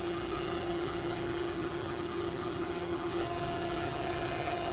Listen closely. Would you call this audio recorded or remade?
remade